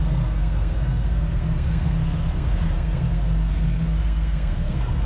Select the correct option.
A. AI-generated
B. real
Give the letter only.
A